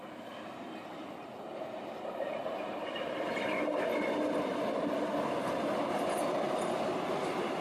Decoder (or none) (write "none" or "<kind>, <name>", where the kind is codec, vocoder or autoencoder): none